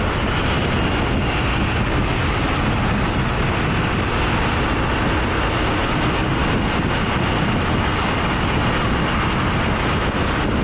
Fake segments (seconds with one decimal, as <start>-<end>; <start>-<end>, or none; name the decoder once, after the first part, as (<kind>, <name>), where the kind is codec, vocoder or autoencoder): 6.2-9.1 (vocoder, BigVGAN v2)